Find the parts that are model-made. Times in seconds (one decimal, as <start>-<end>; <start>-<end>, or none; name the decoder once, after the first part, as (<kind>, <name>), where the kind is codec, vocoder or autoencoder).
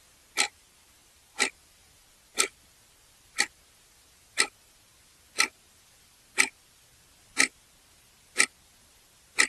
none